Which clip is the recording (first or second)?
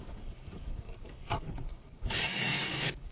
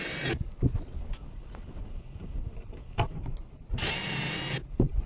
second